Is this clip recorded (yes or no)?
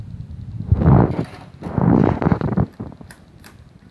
yes